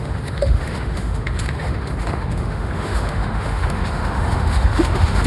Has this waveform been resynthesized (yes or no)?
yes